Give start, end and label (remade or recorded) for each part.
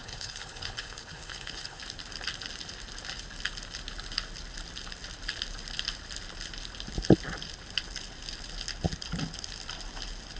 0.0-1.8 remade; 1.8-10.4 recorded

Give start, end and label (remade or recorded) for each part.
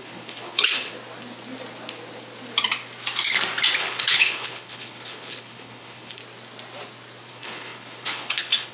0.0-0.9 remade; 0.9-3.8 recorded; 3.8-6.2 remade; 6.2-7.3 recorded; 7.3-8.7 remade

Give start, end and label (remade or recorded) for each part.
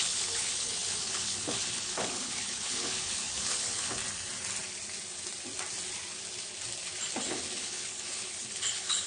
0.0-4.0 remade; 4.0-7.2 recorded; 7.2-9.1 remade